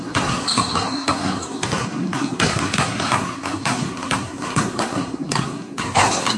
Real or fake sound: fake